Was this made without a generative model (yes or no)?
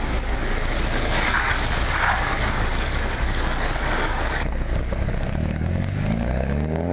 no